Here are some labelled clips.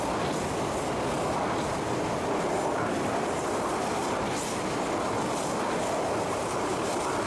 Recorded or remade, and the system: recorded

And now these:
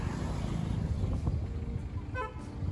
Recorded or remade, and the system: recorded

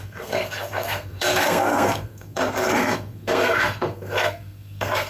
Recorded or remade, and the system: remade, codec, SNAC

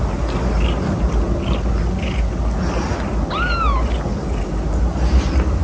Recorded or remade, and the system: recorded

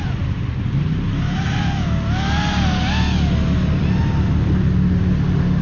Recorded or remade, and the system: recorded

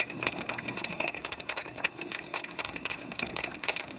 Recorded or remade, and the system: remade, codec, SNAC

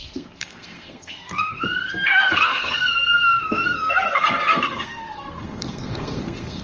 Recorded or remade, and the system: remade, codec, SNAC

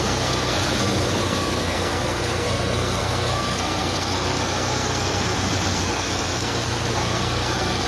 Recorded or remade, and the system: remade, codec, SNAC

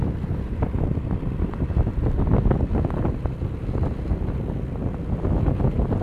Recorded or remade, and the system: recorded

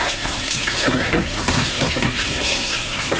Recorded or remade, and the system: remade, codec, SNAC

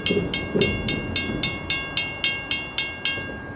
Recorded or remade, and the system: recorded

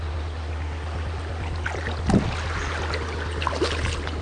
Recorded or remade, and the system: recorded